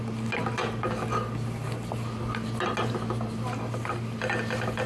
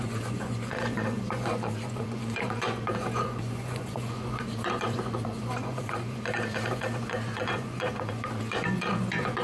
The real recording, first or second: first